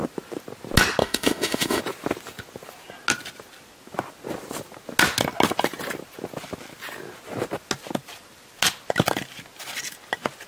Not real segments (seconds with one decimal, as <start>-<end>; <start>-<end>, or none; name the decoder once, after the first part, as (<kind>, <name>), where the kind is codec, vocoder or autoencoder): 1.0-1.8 (autoencoder, DAC-VAE)